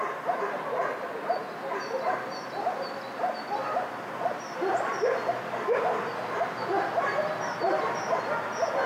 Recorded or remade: recorded